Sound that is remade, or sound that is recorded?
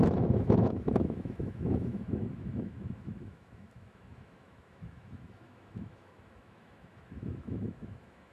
remade